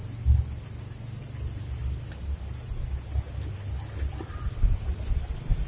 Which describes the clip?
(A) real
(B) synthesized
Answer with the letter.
A